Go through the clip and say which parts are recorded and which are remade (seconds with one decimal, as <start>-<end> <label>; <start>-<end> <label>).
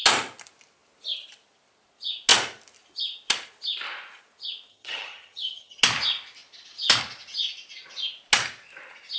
0.0-4.7 recorded; 4.7-5.8 remade; 5.8-9.2 recorded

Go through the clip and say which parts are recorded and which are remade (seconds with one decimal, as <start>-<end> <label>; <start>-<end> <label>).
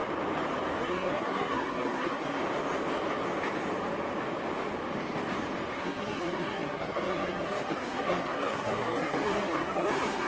0.0-0.8 recorded; 0.8-2.4 remade; 2.4-5.8 recorded; 5.8-10.3 remade